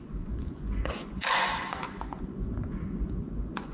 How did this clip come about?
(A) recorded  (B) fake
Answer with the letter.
B